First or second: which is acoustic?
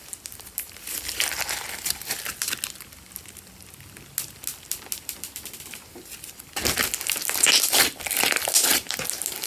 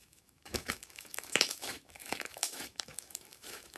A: first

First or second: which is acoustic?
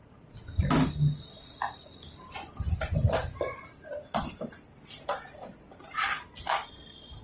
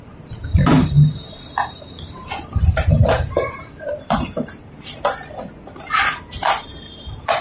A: first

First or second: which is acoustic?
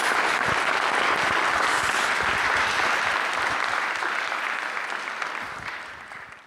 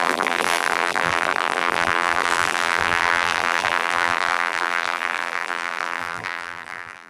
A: first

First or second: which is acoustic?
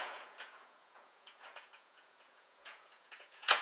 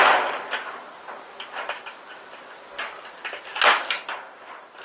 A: second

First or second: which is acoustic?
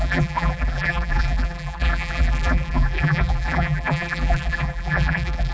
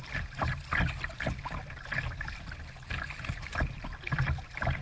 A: second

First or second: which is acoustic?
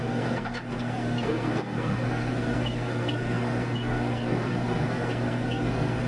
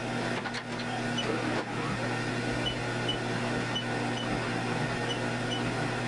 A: second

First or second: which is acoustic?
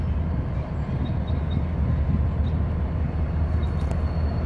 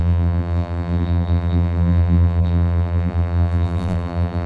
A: first